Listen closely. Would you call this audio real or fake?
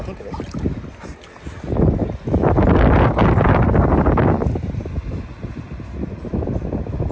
real